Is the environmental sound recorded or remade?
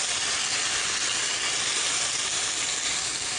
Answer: recorded